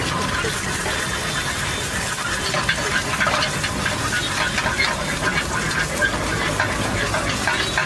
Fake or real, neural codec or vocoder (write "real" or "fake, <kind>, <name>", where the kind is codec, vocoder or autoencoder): real